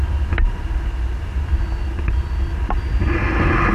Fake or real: real